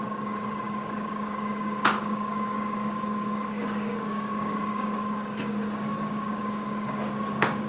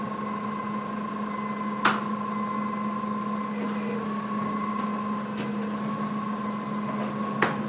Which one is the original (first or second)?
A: second